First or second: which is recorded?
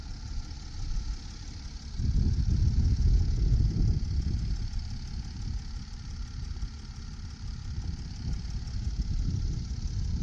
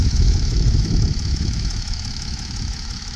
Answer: first